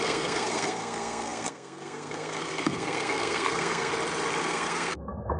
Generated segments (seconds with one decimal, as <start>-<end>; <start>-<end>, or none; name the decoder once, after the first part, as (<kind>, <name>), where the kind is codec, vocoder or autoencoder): 0.0-3.9 (codec, SNAC); 4.4-5.4